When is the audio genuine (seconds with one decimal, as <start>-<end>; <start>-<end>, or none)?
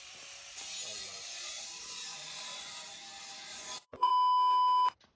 0.0-0.9; 2.7-3.5; 4.1-5.2